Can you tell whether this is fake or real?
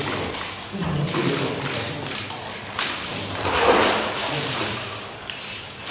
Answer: fake